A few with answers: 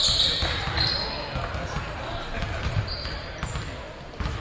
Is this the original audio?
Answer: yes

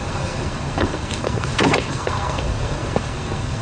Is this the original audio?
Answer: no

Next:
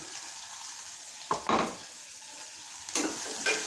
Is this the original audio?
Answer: yes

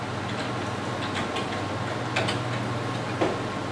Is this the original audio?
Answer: yes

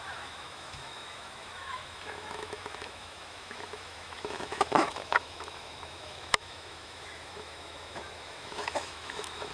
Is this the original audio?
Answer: no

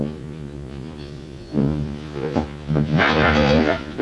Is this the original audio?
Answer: no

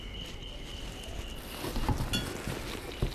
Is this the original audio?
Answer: yes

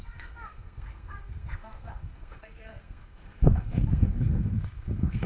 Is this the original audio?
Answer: no